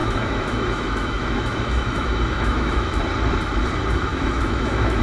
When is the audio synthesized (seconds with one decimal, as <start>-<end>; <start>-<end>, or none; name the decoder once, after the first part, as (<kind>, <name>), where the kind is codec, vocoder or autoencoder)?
0.0-3.0 (autoencoder, DAC-VAE); 4.1-5.0